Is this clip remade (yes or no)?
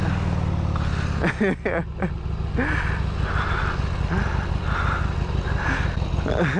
no